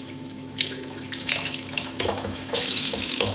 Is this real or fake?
fake